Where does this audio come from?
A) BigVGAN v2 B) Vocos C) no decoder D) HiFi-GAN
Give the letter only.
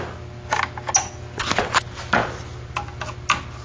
C